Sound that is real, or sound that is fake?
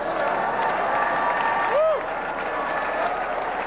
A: real